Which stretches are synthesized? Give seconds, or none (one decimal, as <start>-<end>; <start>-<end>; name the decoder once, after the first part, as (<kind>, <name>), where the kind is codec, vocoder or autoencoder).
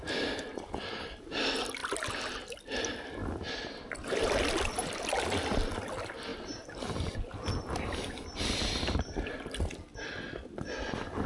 none